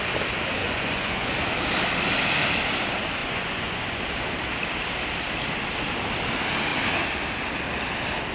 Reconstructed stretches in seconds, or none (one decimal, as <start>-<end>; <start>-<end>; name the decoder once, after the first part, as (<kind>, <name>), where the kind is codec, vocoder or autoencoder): 0.6-1.4 (vocoder, Vocos); 3.2-4.0